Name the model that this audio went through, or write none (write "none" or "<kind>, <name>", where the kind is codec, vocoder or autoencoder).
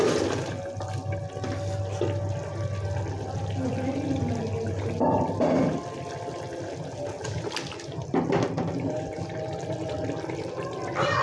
none